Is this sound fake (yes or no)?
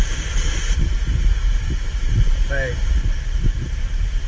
yes